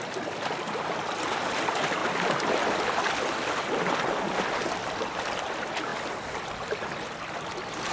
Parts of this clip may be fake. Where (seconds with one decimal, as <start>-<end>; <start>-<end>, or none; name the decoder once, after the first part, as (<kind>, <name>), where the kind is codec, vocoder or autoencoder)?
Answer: none